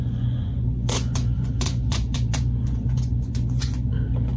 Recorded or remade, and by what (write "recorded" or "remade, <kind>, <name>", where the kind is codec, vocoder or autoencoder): remade, vocoder, Vocos